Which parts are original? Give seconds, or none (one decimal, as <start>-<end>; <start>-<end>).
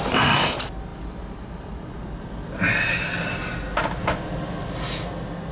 0.0-5.5